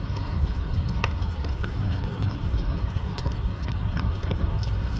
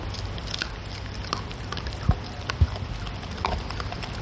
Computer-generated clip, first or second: first